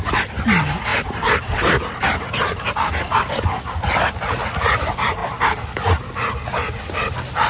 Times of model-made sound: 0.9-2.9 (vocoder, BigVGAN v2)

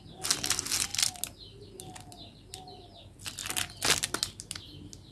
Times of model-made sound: none

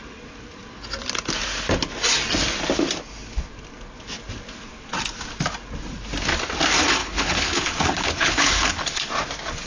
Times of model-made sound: 7.0-9.1 (codec, HILCodec)